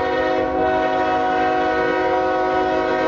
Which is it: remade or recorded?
recorded